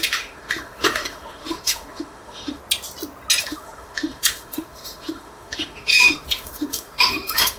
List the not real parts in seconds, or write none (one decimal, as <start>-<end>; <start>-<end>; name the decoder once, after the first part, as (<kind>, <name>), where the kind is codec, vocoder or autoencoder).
0.0-2.6 (autoencoder, DAC-VAE); 3.4-7.6